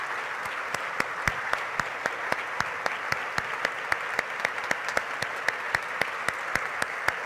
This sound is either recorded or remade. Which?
recorded